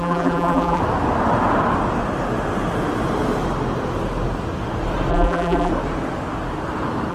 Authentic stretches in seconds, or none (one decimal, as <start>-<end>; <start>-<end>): 0.8-5.1; 5.7-7.1